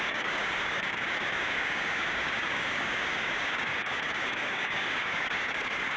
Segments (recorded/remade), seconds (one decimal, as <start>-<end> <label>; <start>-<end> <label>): 0.0-6.0 remade